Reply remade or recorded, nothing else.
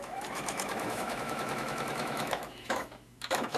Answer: remade